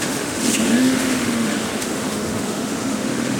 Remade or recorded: remade